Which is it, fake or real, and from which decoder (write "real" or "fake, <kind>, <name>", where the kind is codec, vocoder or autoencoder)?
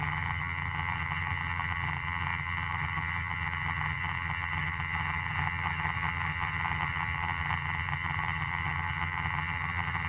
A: fake, vocoder, HiFi-GAN